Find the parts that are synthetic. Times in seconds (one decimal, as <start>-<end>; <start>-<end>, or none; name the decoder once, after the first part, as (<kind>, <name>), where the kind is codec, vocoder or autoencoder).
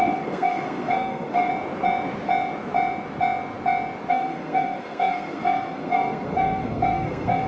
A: 0.0-1.5 (codec, SNAC); 4.1-7.5